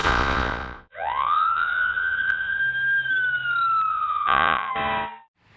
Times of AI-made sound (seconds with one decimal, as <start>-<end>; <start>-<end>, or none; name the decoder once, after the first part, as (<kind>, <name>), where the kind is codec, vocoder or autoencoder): 0.0-2.6 (vocoder, Vocos); 3.9-4.7